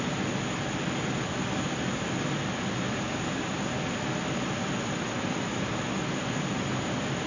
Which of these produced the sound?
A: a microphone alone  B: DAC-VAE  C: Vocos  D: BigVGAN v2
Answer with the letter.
A